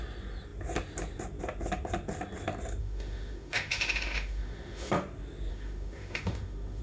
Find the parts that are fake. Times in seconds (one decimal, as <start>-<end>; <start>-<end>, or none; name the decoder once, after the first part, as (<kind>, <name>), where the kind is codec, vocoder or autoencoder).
2.8-4.9 (autoencoder, DAC-VAE); 5.5-6.8